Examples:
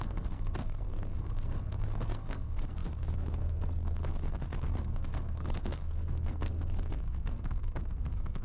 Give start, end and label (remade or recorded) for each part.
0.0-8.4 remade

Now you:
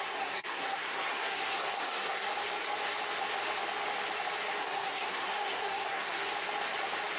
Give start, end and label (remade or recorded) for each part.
0.0-2.3 remade; 2.3-4.6 recorded; 4.6-6.3 remade; 6.3-7.2 recorded

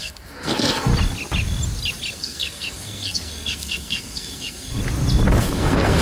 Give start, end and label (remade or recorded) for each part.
0.0-0.9 remade; 0.9-2.1 recorded; 2.1-4.8 remade; 4.8-5.4 recorded; 5.4-6.0 remade